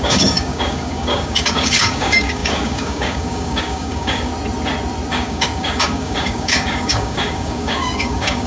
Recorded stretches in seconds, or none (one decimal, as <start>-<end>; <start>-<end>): 4.3-5.1